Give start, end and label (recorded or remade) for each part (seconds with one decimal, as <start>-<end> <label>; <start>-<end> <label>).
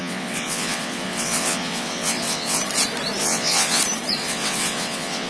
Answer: 0.0-2.6 remade; 2.6-3.2 recorded; 3.2-3.8 remade; 3.8-4.2 recorded; 4.2-5.3 remade